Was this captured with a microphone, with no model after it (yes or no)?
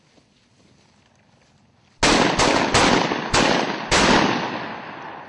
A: yes